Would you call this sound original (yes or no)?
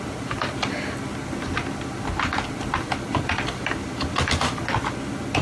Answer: yes